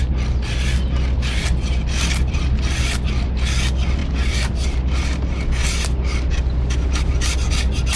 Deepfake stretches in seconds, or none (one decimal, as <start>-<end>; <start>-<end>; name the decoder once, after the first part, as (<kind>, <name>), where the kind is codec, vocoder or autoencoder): none